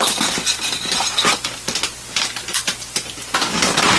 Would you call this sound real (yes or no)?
yes